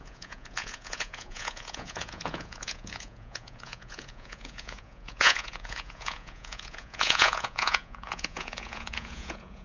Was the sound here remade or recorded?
remade